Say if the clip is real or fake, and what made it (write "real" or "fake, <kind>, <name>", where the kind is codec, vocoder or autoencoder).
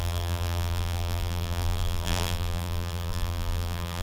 fake, vocoder, BigVGAN v2